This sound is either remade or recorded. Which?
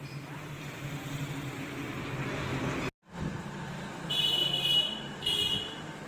recorded